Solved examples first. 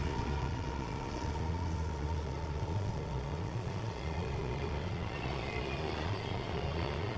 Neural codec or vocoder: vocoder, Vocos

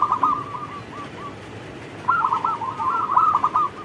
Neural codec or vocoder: none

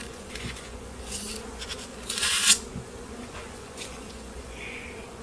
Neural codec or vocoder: vocoder, Vocos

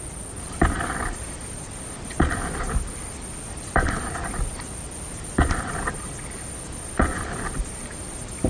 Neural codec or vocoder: none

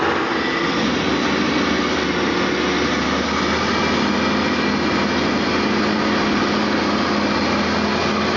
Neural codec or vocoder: none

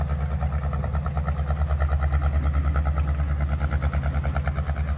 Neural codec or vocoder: none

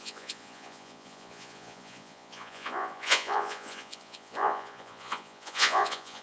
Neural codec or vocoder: vocoder, Vocos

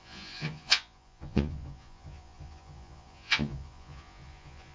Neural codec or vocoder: vocoder, Vocos